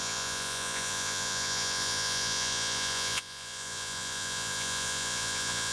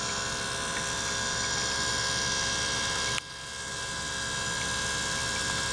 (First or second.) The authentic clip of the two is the second